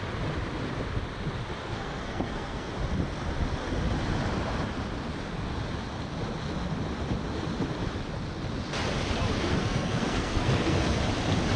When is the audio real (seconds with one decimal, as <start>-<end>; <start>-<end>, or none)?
0.0-1.6; 2.7-9.5; 11.0-11.6